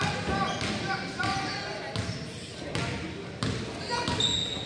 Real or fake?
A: real